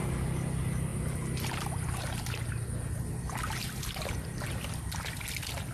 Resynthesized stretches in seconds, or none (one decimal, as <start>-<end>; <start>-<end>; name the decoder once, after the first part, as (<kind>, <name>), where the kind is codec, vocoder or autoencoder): none